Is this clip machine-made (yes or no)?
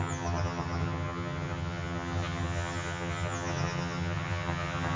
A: yes